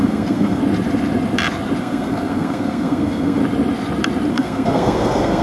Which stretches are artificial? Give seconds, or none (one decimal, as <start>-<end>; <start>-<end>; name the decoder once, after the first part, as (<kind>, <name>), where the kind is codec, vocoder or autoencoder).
0.0-0.6 (codec, SNAC); 1.8-3.4; 4.3-5.4